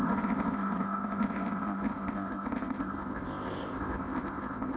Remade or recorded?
remade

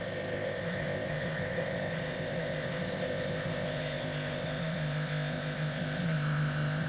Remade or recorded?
remade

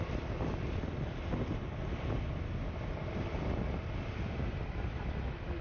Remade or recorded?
recorded